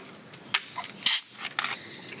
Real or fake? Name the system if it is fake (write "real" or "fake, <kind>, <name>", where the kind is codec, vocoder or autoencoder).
real